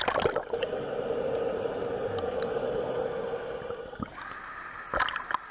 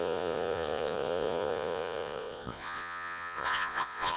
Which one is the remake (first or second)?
second